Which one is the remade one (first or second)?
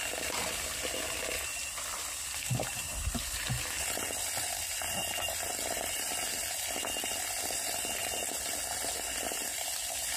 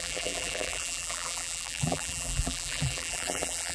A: second